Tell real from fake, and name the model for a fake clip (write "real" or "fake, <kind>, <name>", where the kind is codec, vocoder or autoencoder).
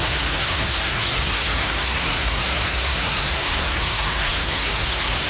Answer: fake, codec, SNAC